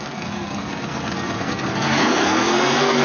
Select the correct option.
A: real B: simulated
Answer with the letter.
B